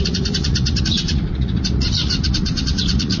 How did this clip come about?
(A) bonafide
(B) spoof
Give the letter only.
B